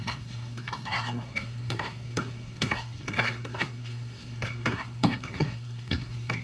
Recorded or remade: remade